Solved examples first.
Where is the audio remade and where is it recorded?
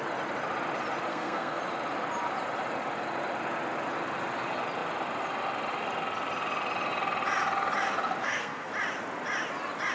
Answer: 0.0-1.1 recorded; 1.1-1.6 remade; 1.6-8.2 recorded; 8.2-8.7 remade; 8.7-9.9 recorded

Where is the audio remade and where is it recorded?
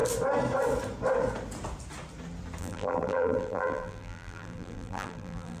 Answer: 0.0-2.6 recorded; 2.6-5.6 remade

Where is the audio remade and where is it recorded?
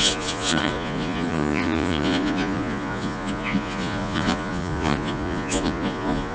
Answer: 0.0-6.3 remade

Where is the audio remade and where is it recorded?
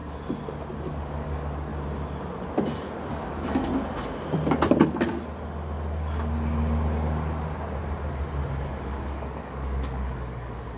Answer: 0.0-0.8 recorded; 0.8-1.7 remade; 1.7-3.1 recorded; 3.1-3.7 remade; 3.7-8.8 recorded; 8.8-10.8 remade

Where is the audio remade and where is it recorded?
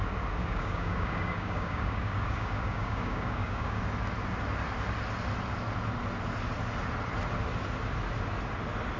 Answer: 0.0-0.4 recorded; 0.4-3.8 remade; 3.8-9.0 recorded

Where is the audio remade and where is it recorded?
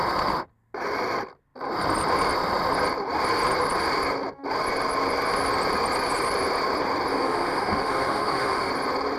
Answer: 0.0-7.1 recorded; 7.1-8.7 remade; 8.7-9.2 recorded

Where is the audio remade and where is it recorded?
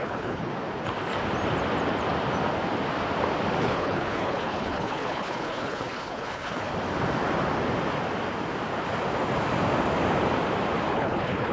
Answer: 0.0-0.5 remade; 0.5-3.6 recorded; 3.6-6.7 remade; 6.7-10.9 recorded; 10.9-11.5 remade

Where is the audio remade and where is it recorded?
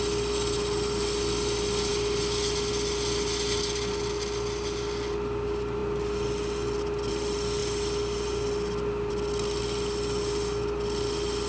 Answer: 0.0-11.5 recorded